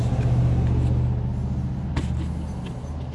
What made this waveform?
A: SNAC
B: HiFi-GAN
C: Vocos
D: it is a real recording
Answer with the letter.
D